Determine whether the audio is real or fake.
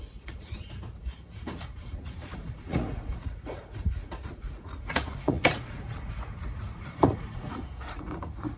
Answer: fake